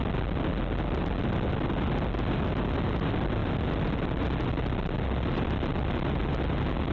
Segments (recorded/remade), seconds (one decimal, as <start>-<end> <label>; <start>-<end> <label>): 0.0-6.9 recorded